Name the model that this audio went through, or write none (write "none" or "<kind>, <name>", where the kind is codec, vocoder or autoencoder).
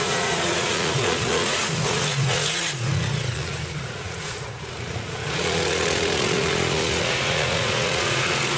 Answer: vocoder, Vocos